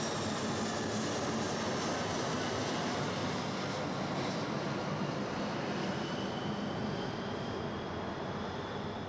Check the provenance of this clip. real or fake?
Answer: real